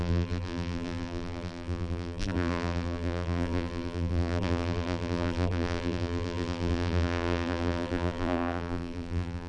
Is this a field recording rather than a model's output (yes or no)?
no